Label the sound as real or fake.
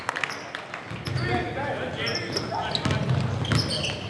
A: real